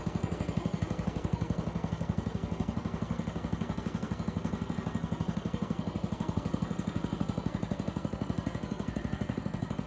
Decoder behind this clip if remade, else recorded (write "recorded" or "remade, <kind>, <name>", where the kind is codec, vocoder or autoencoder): remade, codec, SNAC